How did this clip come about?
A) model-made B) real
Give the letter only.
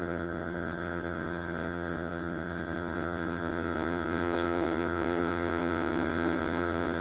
A